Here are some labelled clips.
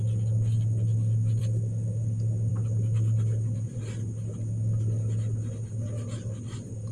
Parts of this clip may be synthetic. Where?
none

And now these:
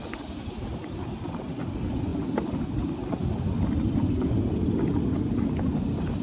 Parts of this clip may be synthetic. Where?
none

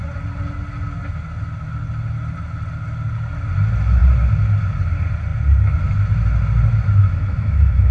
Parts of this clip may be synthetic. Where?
7.0-7.9 (autoencoder, DAC-VAE)

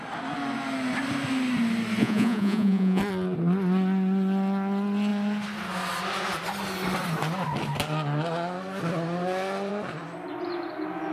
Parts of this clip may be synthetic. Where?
2.0-3.0 (vocoder, Vocos)

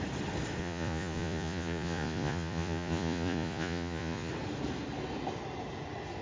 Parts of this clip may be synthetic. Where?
0.6-4.3 (vocoder, Vocos)

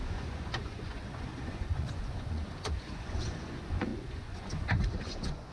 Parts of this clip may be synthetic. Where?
0.0-5.5 (vocoder, Vocos)

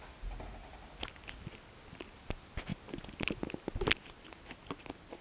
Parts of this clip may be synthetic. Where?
none

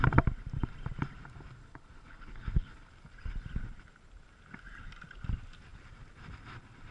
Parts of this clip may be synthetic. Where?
1.6-2.9 (codec, HILCodec)